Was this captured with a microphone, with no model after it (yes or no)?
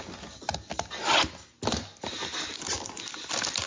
yes